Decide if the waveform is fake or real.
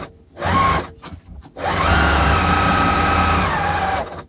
real